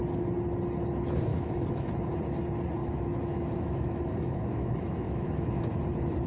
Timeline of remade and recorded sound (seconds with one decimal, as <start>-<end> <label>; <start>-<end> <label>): 0.0-1.3 recorded; 1.3-1.9 remade; 1.9-2.8 recorded; 2.8-5.8 remade; 5.8-6.3 recorded